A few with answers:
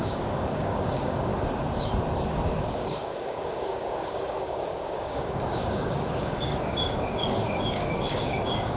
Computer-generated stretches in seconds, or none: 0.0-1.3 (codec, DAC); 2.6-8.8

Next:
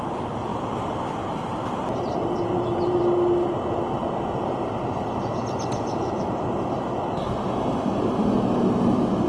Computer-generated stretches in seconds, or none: 0.5-3.0 (vocoder, BigVGAN v2); 4.0-5.2